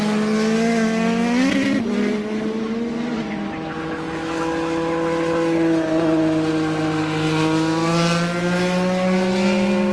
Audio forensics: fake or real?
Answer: real